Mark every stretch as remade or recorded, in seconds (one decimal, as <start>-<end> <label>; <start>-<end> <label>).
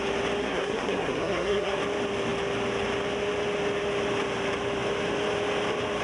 0.0-0.4 recorded; 0.4-1.8 remade; 1.8-6.0 recorded